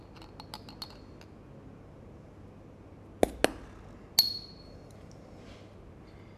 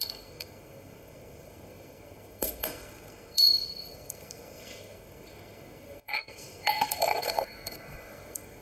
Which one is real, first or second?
first